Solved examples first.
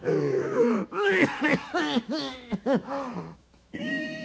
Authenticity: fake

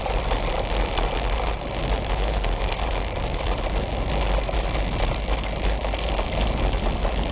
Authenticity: real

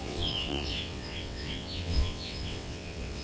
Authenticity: fake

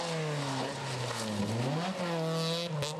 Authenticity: real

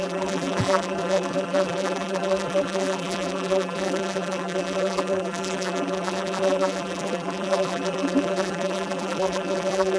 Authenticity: fake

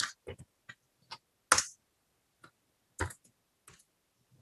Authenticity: real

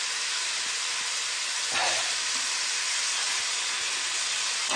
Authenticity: real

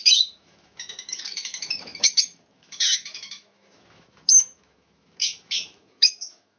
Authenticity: fake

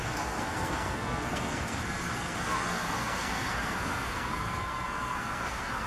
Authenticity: fake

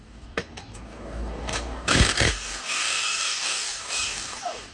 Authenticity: fake